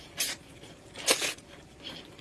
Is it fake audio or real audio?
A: real